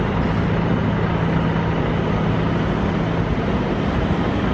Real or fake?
real